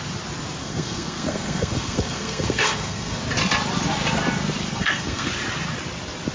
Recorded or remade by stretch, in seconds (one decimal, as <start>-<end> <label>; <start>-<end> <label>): 0.0-0.6 recorded; 0.6-3.2 remade; 3.2-4.7 recorded; 4.7-5.3 remade; 5.3-6.3 recorded